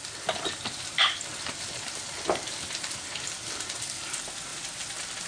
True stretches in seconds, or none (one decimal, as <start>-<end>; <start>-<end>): 0.0-5.3